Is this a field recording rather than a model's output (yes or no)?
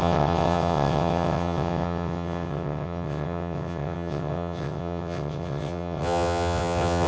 no